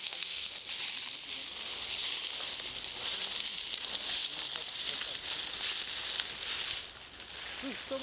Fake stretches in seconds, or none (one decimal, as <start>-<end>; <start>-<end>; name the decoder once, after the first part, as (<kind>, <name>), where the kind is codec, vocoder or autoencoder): 0.0-0.5 (codec, SNAC)